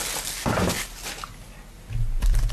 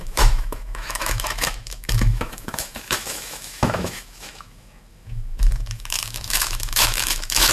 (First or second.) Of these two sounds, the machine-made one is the second